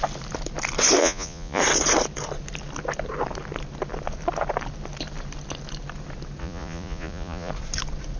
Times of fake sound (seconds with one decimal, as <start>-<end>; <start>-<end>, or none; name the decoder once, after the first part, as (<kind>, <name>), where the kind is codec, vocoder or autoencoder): 1.0-1.6 (vocoder, Vocos); 6.4-7.5

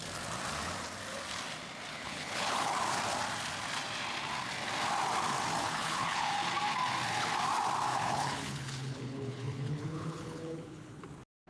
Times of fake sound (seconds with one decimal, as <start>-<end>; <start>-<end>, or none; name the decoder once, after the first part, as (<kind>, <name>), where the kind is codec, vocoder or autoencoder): 1.9-2.7 (codec, HILCodec); 5.6-6.3; 7.9-11.0

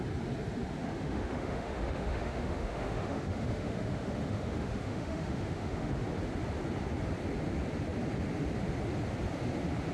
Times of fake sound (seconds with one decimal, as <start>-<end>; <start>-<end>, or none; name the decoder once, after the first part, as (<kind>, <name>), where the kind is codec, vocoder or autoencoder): 0.8-5.9 (autoencoder, DAC-VAE)

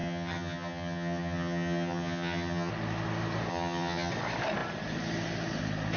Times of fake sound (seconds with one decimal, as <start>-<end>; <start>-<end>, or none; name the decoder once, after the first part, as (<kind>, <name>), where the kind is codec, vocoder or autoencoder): 0.0-2.7 (vocoder, HiFi-GAN); 3.5-4.1

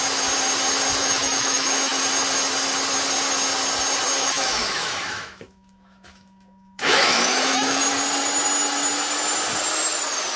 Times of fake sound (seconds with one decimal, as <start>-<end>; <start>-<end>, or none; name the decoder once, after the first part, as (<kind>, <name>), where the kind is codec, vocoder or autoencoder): 1.0-2.0 (autoencoder, DAC-VAE); 4.2-7.8